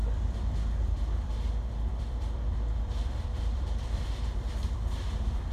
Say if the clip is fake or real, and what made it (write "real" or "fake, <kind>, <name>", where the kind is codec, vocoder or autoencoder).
fake, vocoder, BigVGAN v2